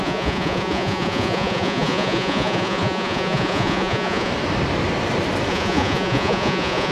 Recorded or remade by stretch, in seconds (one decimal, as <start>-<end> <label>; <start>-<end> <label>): 0.0-4.3 remade; 4.3-5.5 recorded; 5.5-6.9 remade